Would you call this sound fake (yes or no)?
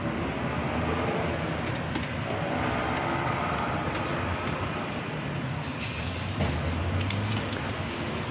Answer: no